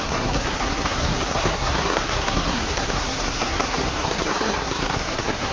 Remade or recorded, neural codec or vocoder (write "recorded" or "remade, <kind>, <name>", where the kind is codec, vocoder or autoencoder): remade, codec, SNAC